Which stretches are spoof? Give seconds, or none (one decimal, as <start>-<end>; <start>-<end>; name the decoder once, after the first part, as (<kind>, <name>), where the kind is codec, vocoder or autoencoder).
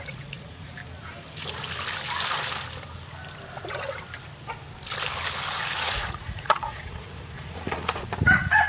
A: 0.0-0.8 (vocoder, Vocos); 5.6-8.7